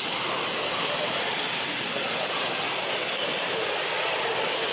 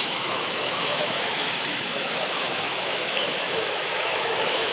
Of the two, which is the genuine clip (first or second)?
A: first